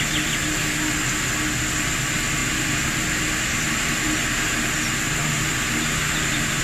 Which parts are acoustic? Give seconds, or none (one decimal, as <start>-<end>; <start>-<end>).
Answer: 0.0-5.2